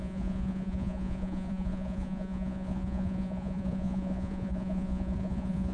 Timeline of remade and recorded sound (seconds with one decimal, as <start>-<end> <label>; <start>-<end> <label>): 0.0-5.7 remade